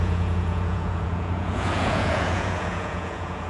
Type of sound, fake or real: fake